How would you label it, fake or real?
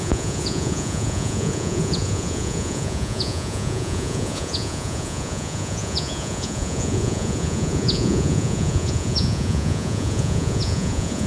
fake